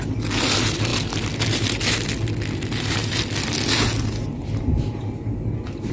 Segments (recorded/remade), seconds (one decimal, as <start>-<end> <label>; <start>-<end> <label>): 0.0-5.9 recorded